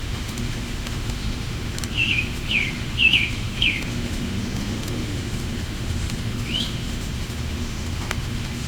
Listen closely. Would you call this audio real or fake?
fake